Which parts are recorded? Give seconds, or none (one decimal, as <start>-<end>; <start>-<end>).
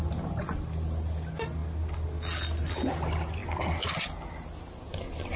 0.0-5.4